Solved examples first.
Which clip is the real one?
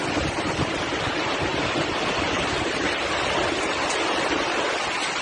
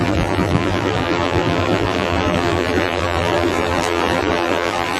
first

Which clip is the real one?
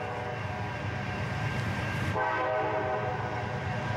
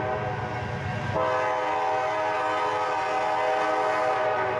second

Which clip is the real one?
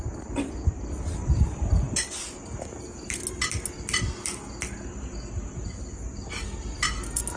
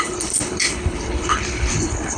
first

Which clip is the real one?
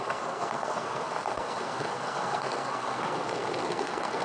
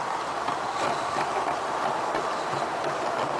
second